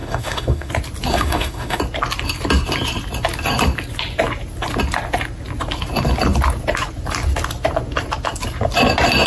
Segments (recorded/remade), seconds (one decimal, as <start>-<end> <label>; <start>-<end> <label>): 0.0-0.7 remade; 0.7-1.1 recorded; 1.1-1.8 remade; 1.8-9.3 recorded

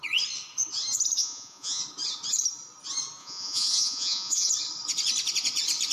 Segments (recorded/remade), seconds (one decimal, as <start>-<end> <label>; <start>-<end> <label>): 0.0-1.2 recorded; 1.2-1.8 remade; 1.8-3.2 recorded; 3.2-4.5 remade; 4.5-5.9 recorded

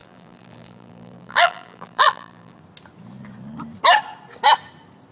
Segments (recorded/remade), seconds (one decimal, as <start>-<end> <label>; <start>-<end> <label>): 0.0-2.6 remade; 2.6-5.1 recorded

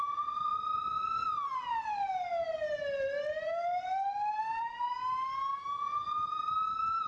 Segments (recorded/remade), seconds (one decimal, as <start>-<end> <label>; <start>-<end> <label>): 0.0-7.1 recorded